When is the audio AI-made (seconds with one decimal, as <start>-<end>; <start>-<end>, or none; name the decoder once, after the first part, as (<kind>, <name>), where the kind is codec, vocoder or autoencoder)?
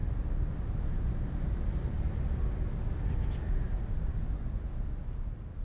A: 4.1-4.6 (codec, DAC)